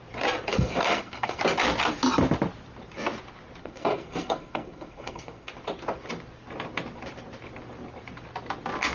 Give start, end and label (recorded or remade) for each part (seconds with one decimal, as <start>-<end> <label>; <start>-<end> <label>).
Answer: 0.0-0.5 recorded; 0.5-1.4 remade; 1.4-3.6 recorded; 3.6-5.5 remade; 5.5-8.9 recorded